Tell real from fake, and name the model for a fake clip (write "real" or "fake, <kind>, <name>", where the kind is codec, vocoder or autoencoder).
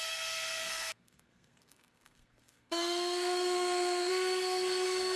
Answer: fake, codec, SNAC